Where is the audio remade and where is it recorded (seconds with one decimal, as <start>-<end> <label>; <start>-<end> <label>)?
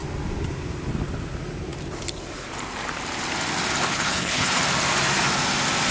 0.0-3.9 recorded; 3.9-4.6 remade; 4.6-5.9 recorded